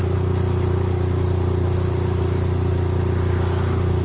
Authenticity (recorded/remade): recorded